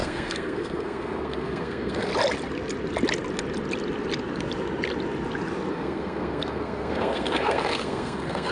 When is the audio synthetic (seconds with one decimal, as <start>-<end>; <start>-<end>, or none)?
0.0-2.1; 5.7-8.5